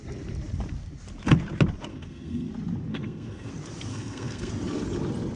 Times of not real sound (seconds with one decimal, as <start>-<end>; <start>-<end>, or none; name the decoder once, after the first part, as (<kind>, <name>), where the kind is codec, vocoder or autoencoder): 1.9-2.5 (codec, SNAC); 2.9-3.5; 3.9-4.5